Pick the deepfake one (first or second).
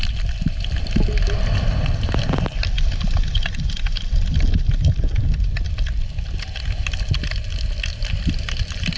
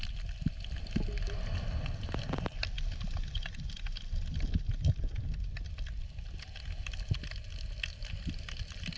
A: first